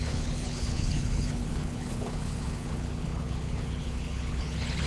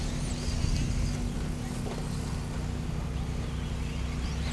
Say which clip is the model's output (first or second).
first